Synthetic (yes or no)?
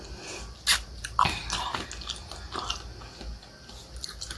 no